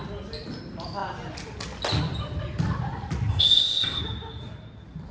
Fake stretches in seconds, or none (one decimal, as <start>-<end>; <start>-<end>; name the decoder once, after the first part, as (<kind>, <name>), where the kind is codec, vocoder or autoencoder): 3.3-4.0 (codec, ZipCodec)